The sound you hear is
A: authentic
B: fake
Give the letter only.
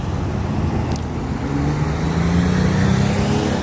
A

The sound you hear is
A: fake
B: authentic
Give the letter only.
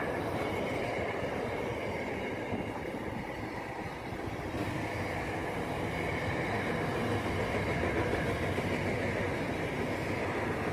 B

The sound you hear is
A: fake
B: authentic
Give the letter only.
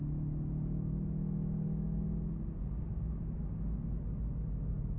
B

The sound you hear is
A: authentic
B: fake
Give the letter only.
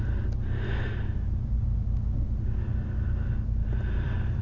A